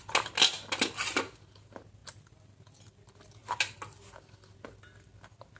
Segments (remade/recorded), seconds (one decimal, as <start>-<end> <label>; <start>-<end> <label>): 0.0-5.6 recorded

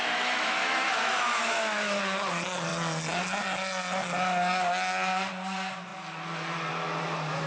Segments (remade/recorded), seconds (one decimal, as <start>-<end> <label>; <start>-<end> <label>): 0.0-2.0 remade; 2.0-7.5 recorded

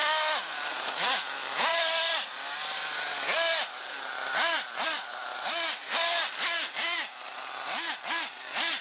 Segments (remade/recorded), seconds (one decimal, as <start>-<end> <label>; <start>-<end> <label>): 0.0-8.8 recorded

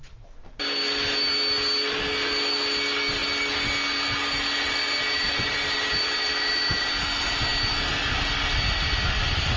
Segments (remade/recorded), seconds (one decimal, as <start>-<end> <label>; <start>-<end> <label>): 0.0-9.6 recorded

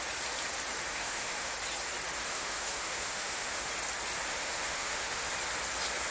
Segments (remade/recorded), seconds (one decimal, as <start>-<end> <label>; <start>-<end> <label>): 0.0-0.9 recorded; 0.9-1.5 remade; 1.5-2.2 recorded; 2.2-3.7 remade; 3.7-4.3 recorded; 4.3-5.3 remade; 5.3-6.1 recorded

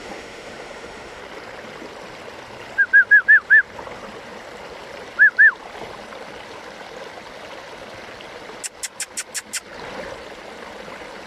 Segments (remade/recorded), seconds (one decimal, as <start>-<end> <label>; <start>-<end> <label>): 0.0-1.2 remade; 1.2-11.3 recorded

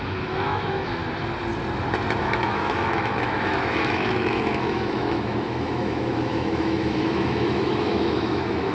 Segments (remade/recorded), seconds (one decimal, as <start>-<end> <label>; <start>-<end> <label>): 0.0-1.0 remade; 1.0-2.2 recorded; 2.2-8.7 remade